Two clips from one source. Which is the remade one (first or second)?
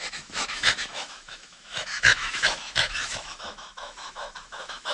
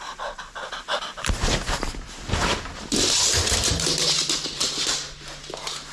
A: first